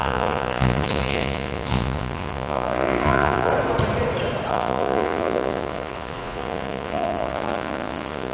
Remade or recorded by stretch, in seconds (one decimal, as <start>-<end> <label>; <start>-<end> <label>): 0.0-3.5 remade; 3.5-4.5 recorded; 4.5-8.3 remade